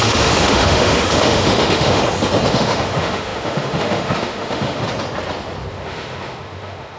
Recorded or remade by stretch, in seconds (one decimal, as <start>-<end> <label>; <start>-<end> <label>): 0.0-2.0 remade; 2.0-2.5 recorded; 2.5-4.8 remade; 4.8-5.7 recorded; 5.7-7.0 remade